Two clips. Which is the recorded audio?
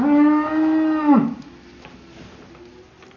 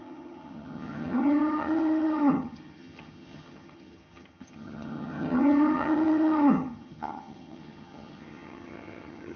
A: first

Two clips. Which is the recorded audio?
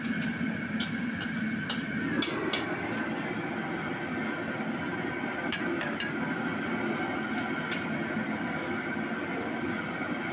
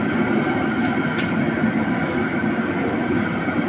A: first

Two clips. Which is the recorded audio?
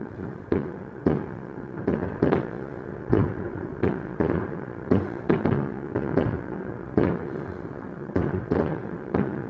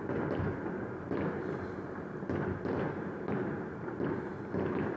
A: second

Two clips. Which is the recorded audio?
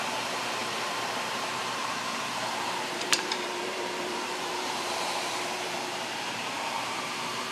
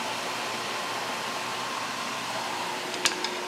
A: second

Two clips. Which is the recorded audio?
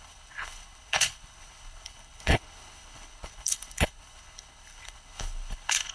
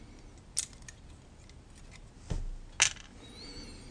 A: second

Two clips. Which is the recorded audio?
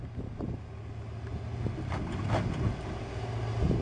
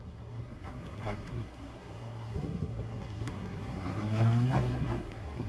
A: first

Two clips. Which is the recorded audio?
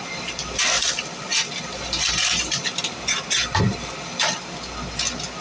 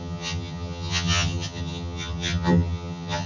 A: first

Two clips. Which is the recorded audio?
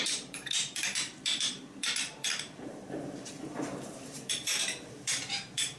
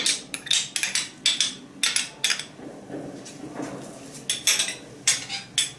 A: second